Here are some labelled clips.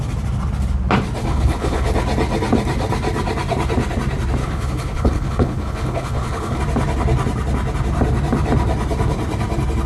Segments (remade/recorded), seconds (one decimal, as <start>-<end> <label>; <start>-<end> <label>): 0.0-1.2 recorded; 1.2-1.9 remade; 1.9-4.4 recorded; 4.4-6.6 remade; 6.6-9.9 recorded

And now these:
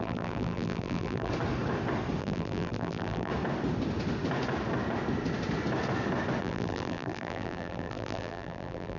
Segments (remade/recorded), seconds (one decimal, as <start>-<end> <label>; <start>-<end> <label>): 0.0-1.3 remade; 1.3-2.2 recorded; 2.2-3.3 remade; 3.3-6.4 recorded; 6.4-9.0 remade

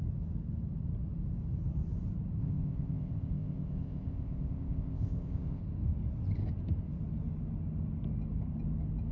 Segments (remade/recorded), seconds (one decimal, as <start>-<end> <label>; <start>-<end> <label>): 0.0-2.4 recorded; 2.4-5.6 remade; 5.6-9.1 recorded